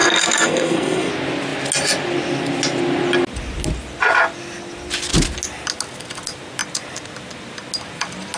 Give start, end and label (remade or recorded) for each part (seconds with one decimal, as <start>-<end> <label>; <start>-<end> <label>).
0.0-1.1 remade; 1.1-8.4 recorded